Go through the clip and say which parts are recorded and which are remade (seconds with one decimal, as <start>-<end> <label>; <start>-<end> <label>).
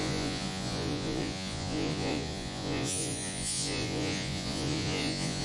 0.0-5.4 remade